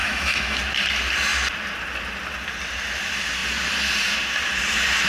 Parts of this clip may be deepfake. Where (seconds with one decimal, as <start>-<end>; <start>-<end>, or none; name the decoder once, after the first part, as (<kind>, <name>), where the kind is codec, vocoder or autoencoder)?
0.0-0.6 (autoencoder, DAC-VAE)